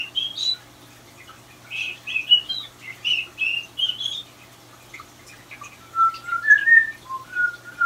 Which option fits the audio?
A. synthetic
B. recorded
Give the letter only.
B